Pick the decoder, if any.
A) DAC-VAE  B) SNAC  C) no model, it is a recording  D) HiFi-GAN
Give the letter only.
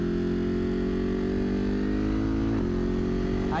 C